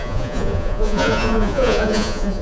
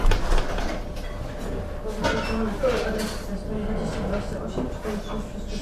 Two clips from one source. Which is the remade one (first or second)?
first